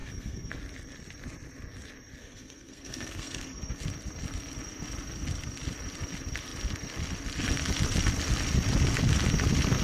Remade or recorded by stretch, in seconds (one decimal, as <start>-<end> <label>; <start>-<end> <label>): 0.0-0.5 remade; 0.5-2.2 recorded; 2.2-3.7 remade; 3.7-9.8 recorded